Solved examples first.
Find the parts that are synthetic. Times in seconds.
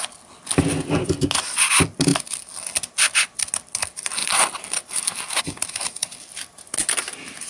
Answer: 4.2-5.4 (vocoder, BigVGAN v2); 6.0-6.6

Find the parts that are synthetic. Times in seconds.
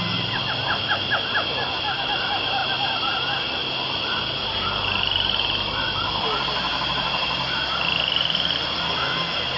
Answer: none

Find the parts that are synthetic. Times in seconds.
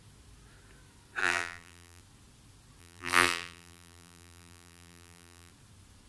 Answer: 1.2-2.0 (vocoder, BigVGAN v2); 2.8-5.5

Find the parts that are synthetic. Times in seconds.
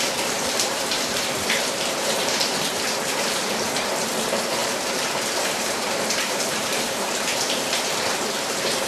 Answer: 0.0-8.9 (vocoder, BigVGAN v2)